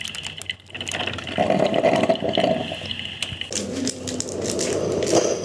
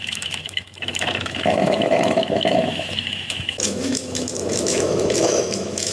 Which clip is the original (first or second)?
first